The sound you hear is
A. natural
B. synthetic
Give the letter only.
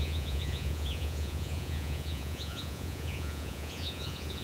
B